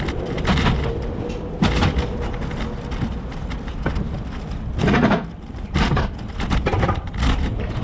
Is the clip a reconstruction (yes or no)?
no